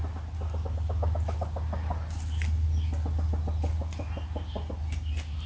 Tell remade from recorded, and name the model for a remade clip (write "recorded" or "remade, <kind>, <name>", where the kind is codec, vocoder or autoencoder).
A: recorded